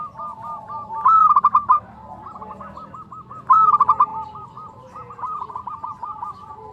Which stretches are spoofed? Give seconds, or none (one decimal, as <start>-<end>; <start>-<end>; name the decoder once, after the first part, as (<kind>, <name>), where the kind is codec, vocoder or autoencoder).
0.0-1.2 (vocoder, BigVGAN v2); 3.5-4.1; 5.5-6.7